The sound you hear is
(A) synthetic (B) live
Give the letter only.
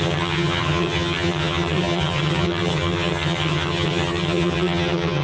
A